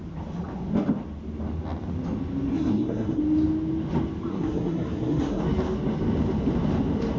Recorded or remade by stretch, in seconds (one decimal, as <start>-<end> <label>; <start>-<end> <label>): 0.0-2.5 recorded; 2.5-3.2 remade; 3.2-4.3 recorded; 4.3-5.4 remade; 5.4-7.2 recorded

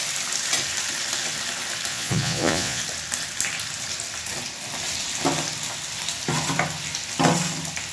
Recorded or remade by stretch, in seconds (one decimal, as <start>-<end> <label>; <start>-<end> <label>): 0.0-1.9 recorded; 1.9-2.8 remade; 2.8-7.9 recorded

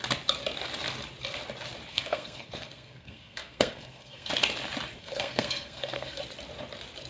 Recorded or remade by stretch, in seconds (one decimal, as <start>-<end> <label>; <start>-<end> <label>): 0.0-1.9 recorded; 1.9-4.3 remade; 4.3-5.0 recorded; 5.0-6.2 remade; 6.2-7.1 recorded

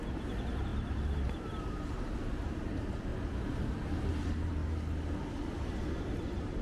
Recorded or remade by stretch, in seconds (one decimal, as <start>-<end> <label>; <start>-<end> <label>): 0.0-3.1 remade; 3.1-4.1 recorded; 4.1-4.6 remade; 4.6-6.0 recorded; 6.0-6.6 remade

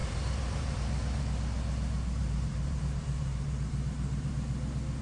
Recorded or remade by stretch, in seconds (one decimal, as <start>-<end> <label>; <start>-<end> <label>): 0.0-1.2 remade; 1.2-2.2 recorded; 2.2-4.3 remade; 4.3-5.0 recorded

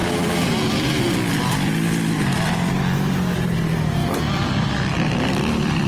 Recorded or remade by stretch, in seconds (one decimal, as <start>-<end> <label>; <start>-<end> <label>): 0.0-5.9 recorded

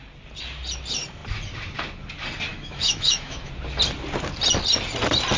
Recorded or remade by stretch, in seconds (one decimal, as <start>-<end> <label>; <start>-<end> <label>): 0.0-2.5 recorded; 2.5-3.5 remade; 3.5-5.4 recorded